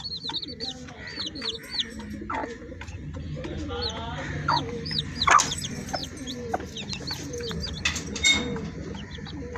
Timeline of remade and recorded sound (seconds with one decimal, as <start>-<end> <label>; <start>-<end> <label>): 0.0-4.4 recorded; 4.4-5.0 remade; 5.0-9.6 recorded